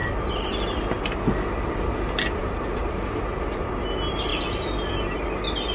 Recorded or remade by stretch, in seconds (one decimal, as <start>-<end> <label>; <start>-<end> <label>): 0.0-5.7 recorded

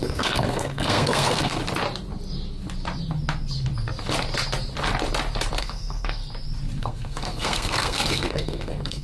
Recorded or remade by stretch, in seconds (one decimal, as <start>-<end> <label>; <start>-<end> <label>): 0.0-1.6 remade; 1.6-5.6 recorded; 5.6-6.2 remade; 6.2-6.8 recorded; 6.8-9.0 remade

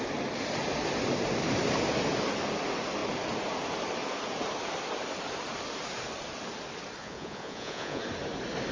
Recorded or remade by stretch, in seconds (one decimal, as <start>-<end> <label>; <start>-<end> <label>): 0.0-7.0 recorded; 7.0-8.0 remade; 8.0-8.7 recorded

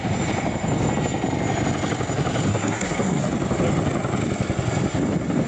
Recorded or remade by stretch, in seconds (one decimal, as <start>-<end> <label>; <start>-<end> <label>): 0.0-2.5 recorded; 2.5-3.2 remade; 3.2-5.5 recorded